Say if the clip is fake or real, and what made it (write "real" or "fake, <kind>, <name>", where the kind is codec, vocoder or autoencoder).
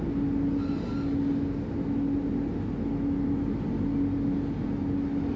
real